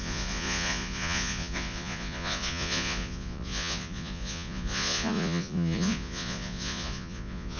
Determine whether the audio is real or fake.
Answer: fake